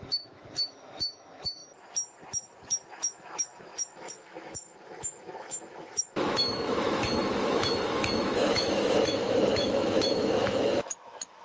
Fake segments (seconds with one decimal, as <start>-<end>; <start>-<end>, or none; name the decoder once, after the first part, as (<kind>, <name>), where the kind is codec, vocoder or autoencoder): 0.0-1.6 (autoencoder, DAC-VAE); 2.9-11.4